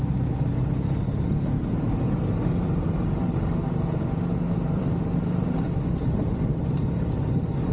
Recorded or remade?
remade